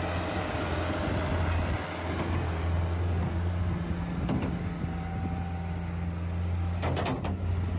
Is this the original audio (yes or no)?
yes